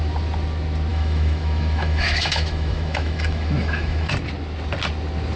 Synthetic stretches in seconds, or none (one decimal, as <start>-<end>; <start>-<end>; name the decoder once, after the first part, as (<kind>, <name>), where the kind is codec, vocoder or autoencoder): 0.9-4.1 (autoencoder, DAC-VAE)